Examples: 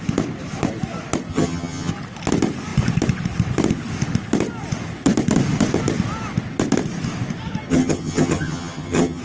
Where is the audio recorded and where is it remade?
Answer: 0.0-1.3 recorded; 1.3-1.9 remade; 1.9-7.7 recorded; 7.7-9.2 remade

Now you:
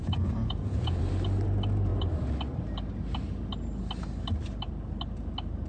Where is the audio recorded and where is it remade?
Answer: 0.0-1.0 remade; 1.0-5.7 recorded

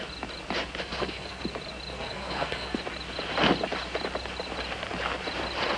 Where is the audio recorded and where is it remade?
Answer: 0.0-0.8 recorded; 0.8-1.4 remade; 1.4-1.9 recorded; 1.9-2.8 remade; 2.8-5.8 recorded

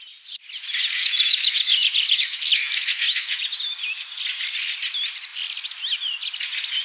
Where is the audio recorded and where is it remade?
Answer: 0.0-1.0 recorded; 1.0-3.4 remade; 3.4-6.8 recorded

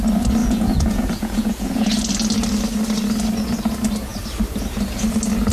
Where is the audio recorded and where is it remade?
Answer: 0.0-0.4 recorded; 0.4-1.9 remade; 1.9-5.5 recorded

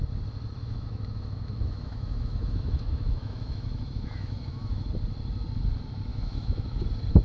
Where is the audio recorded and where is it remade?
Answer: 0.0-0.6 recorded; 0.6-4.9 remade; 4.9-6.1 recorded; 6.1-6.8 remade; 6.8-7.2 recorded

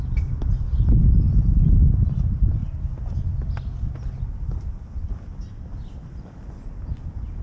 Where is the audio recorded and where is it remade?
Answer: 0.0-7.4 recorded